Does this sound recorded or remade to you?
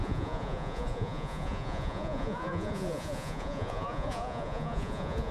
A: remade